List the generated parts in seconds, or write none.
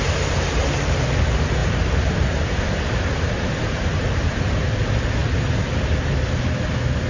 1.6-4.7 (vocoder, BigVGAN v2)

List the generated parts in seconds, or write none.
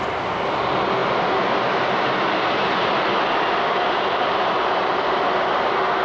none